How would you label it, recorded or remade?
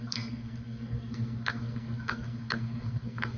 remade